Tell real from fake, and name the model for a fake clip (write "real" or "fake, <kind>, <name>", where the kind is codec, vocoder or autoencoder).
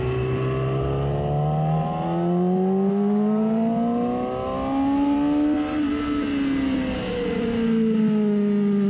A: real